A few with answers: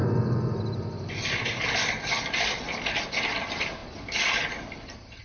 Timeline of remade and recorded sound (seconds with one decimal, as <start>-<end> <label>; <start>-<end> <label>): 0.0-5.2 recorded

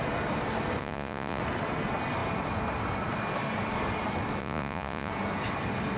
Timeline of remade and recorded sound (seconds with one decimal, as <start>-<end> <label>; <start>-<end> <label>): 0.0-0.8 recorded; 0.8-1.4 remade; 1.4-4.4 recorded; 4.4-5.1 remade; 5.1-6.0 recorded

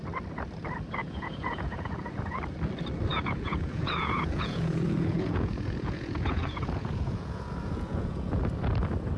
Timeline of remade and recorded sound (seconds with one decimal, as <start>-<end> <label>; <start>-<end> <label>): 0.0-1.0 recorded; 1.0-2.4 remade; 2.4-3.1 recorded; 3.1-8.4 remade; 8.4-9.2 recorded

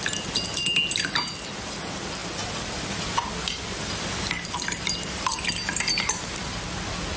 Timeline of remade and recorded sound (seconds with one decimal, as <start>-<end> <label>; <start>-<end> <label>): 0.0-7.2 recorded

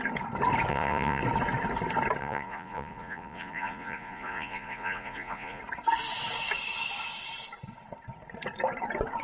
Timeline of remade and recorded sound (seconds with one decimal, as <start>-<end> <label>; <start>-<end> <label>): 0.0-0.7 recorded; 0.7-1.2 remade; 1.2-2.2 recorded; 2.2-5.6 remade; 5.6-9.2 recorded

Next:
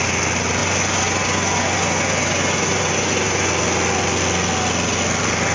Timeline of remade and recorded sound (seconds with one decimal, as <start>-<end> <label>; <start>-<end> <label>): 0.0-0.6 recorded; 0.6-3.5 remade; 3.5-5.5 recorded

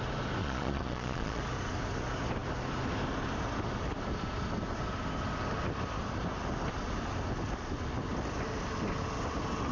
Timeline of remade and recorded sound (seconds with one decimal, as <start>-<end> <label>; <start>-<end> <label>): 0.0-0.4 recorded; 0.4-1.4 remade; 1.4-9.7 recorded